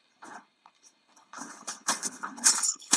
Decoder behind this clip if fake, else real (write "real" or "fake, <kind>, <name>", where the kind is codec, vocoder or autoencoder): fake, codec, HILCodec